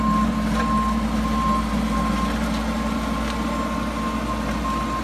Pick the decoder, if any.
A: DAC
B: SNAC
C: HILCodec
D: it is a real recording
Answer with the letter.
D